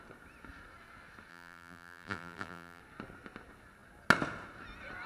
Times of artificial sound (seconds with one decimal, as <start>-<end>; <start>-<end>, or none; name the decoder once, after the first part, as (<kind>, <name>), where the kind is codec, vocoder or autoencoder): 1.3-2.8 (vocoder, BigVGAN v2)